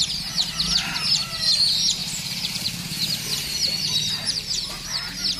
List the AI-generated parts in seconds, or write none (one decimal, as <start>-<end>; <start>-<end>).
2.0-5.4